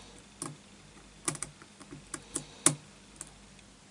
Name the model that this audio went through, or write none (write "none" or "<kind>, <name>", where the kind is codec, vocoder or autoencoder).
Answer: none